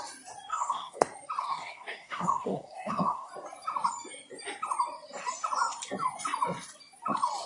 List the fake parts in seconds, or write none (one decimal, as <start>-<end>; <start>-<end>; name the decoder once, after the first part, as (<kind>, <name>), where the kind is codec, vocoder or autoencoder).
0.5-1.0 (codec, SNAC); 1.4-3.3